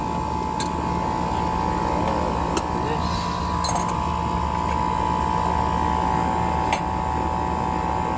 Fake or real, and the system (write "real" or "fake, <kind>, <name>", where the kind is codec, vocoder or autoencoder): real